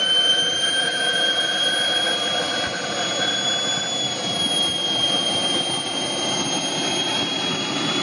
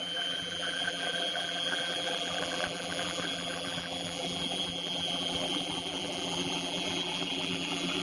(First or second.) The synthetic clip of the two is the second